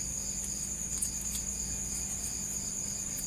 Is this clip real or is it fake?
real